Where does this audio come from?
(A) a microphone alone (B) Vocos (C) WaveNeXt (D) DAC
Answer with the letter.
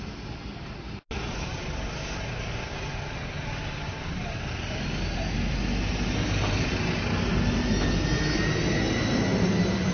A